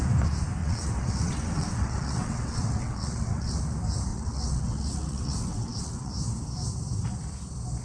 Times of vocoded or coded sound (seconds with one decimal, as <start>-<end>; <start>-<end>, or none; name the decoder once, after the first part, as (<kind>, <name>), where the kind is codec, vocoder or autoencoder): 0.6-3.6 (vocoder, WaveNeXt); 4.1-6.1